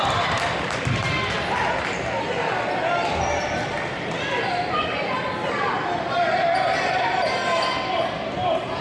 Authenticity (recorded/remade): recorded